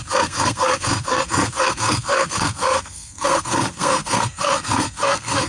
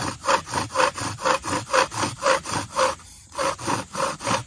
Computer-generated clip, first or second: first